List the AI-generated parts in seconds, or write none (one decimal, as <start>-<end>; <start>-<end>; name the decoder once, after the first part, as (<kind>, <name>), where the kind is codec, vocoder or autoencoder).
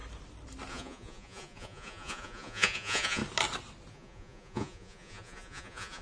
0.7-3.2 (vocoder, Vocos); 3.9-6.0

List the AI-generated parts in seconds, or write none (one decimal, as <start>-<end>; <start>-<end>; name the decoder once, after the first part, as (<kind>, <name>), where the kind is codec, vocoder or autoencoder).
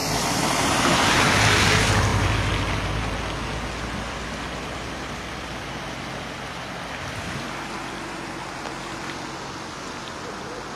none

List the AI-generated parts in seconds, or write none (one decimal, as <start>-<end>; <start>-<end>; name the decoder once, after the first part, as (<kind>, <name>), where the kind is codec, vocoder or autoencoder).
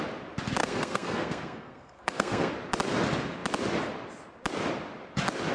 0.6-2.5 (codec, SNAC)